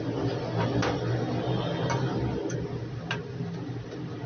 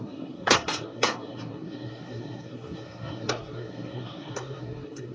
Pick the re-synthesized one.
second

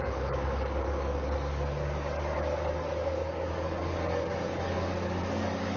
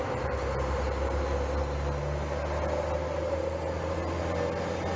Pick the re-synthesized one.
first